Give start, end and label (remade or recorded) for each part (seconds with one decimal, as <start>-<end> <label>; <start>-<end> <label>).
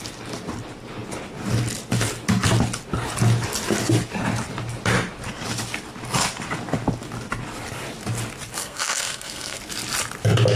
0.0-8.6 recorded; 8.6-9.6 remade; 9.6-10.6 recorded